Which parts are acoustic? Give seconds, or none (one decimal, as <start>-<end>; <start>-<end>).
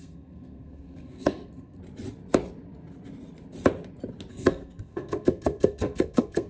1.8-4.3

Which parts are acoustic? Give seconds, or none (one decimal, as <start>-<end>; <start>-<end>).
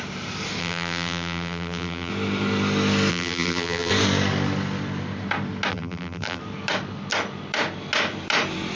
0.0-0.6; 2.1-3.1; 3.9-5.7; 6.4-8.8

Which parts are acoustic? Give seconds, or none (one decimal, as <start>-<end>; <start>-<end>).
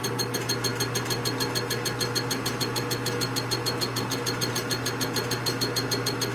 0.0-6.3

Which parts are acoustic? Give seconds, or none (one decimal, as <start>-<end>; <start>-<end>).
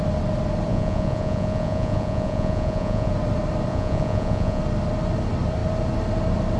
0.0-0.7; 3.1-3.7; 4.6-6.6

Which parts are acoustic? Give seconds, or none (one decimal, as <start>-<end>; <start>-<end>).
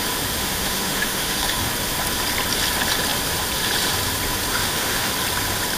0.0-0.4; 1.7-4.5; 5.1-5.8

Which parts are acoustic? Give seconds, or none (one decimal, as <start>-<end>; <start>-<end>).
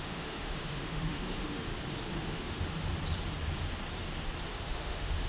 1.7-2.2; 2.9-4.6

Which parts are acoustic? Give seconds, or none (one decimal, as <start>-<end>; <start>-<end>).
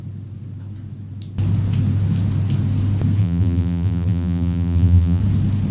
0.0-3.2; 5.2-5.7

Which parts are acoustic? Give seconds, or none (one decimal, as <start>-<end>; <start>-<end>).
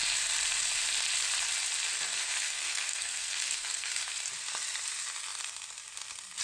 0.0-2.1; 3.9-6.4